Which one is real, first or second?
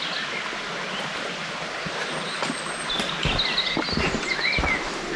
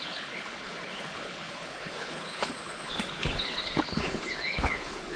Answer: first